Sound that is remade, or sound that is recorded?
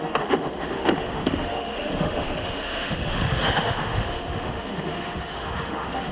remade